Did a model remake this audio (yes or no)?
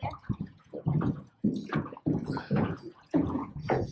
yes